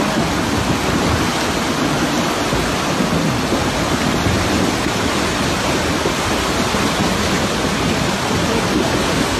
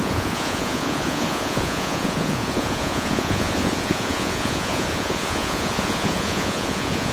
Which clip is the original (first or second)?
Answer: first